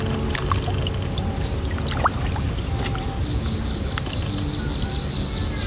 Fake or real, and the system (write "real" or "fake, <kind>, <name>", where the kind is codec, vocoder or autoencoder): real